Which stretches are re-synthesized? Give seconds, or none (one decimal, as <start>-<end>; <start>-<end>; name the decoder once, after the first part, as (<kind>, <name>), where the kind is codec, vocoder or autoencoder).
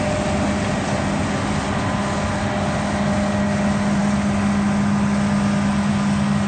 none